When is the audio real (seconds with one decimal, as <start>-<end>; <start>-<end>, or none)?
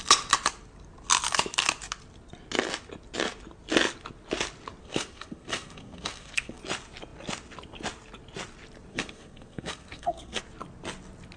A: 0.0-4.8; 6.6-8.9; 10.4-11.4